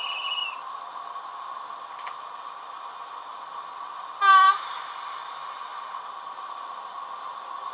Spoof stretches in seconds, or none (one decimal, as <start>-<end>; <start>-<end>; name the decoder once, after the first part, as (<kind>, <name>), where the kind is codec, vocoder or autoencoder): 3.3-4.7 (vocoder, BigVGAN v2); 5.7-7.0